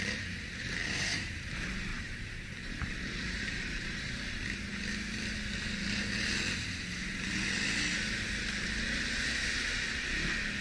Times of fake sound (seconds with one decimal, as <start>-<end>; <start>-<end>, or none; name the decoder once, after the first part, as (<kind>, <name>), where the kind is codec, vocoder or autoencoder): 0.8-1.5 (vocoder, BigVGAN v2); 1.9-4.2